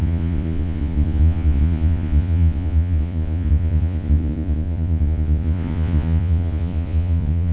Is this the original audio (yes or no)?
no